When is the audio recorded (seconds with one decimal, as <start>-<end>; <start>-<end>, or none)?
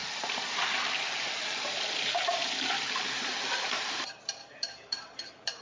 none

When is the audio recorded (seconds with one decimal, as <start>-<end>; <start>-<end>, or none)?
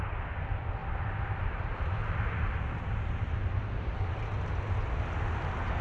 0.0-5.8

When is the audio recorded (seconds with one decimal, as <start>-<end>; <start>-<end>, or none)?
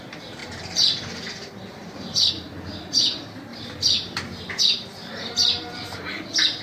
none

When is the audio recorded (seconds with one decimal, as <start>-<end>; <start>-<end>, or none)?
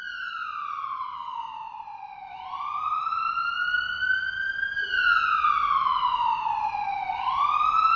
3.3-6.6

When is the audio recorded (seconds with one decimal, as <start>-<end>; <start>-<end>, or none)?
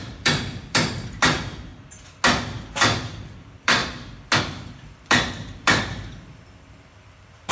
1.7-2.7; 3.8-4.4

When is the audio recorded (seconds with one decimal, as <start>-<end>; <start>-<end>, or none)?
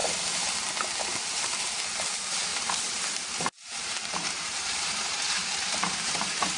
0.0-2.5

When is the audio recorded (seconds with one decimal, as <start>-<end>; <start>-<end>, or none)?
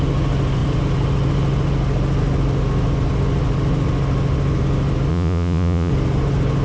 0.0-5.1; 5.9-6.6